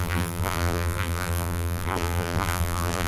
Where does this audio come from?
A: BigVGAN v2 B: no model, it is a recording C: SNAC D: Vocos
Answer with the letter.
A